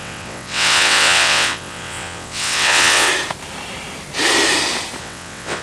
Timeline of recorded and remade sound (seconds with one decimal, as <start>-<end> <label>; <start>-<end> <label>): 0.0-3.1 remade; 3.1-5.0 recorded; 5.0-5.6 remade